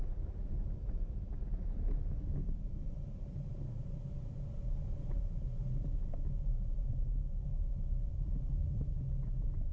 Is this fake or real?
fake